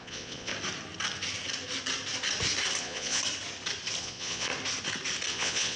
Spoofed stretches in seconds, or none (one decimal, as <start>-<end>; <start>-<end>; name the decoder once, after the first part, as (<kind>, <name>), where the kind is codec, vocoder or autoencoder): 0.0-0.5 (vocoder, Vocos); 2.8-3.2; 4.0-4.5; 5.3-5.8